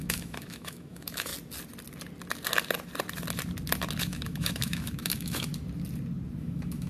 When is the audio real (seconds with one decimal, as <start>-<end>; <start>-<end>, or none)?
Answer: 1.3-4.0; 5.5-6.4